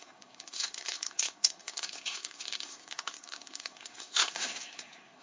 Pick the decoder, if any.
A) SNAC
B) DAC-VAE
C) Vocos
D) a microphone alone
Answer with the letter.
A